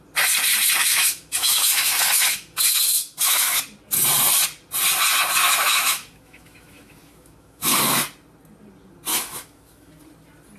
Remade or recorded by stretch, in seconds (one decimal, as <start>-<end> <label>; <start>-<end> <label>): 0.0-0.8 recorded; 0.8-3.6 remade; 3.6-5.4 recorded; 5.4-7.7 remade; 7.7-9.1 recorded; 9.1-10.0 remade; 10.0-10.6 recorded